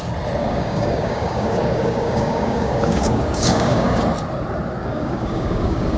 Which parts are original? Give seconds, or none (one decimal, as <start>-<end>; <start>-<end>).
0.0-0.4; 4.0-4.8